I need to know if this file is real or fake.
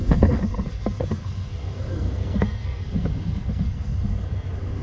fake